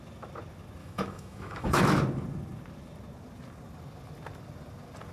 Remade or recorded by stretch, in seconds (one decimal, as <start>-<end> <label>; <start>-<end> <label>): 0.0-0.8 recorded; 0.8-1.8 remade; 1.8-5.1 recorded